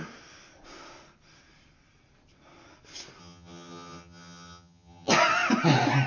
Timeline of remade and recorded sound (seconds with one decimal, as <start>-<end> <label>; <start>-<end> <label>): 0.0-3.2 recorded; 3.2-5.1 remade; 5.1-6.1 recorded